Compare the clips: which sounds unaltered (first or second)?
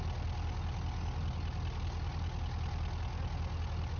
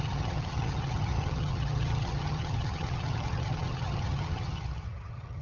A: first